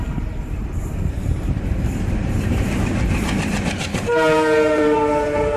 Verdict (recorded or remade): remade